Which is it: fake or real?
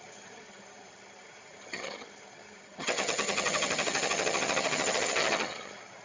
fake